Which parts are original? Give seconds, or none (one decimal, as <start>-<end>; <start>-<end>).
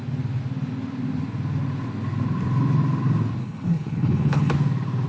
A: 0.0-3.4; 4.5-5.1